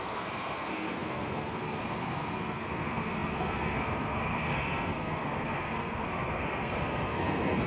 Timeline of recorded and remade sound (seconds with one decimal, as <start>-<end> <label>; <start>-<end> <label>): 0.0-7.7 remade